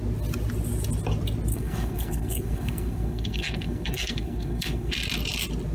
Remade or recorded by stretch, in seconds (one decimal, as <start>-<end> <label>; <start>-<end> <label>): 0.0-1.5 recorded; 1.5-4.9 remade; 4.9-5.7 recorded